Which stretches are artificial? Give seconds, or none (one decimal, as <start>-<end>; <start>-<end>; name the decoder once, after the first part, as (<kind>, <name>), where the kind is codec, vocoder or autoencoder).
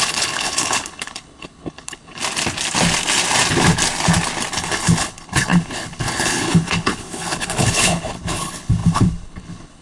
0.0-2.2 (codec, HILCodec); 4.5-9.8